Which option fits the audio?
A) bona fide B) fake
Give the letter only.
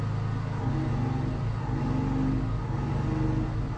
A